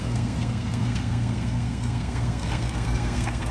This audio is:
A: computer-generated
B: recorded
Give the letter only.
A